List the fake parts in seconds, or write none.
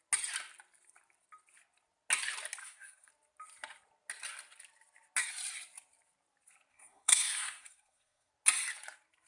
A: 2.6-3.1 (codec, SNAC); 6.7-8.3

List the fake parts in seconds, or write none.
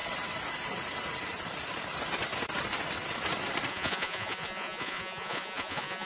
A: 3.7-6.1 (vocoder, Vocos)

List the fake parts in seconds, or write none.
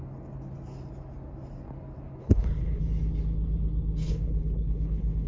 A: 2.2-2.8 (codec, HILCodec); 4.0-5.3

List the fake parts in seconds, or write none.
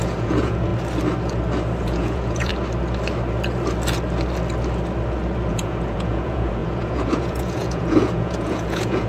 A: 0.0-0.7 (vocoder, Vocos); 1.8-2.5; 5.5-9.1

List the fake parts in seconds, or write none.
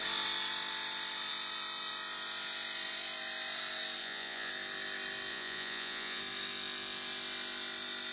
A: 4.0-4.5 (vocoder, Vocos); 5.3-6.2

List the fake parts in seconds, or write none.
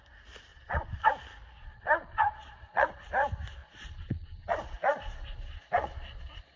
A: 0.5-1.1 (vocoder, Vocos); 1.6-3.1; 3.6-6.6